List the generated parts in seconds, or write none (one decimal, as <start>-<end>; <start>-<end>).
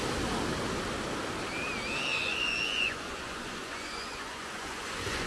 2.1-5.3